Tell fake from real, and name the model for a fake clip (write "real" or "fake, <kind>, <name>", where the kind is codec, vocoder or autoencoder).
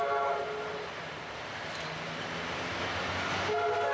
real